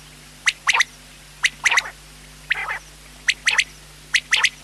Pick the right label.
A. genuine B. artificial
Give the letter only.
A